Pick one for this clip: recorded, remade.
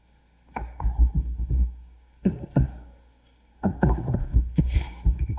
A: remade